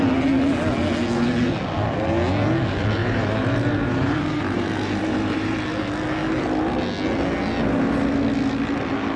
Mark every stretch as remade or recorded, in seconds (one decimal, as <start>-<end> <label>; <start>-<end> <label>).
0.0-3.0 recorded; 3.0-5.6 remade; 5.6-9.2 recorded